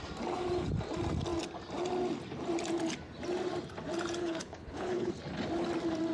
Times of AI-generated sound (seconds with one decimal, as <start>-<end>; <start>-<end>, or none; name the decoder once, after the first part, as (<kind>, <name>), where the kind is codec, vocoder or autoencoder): 4.2-5.1 (codec, HILCodec)